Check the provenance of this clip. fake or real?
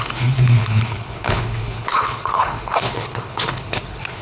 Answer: fake